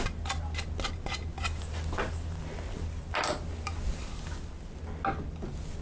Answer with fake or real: real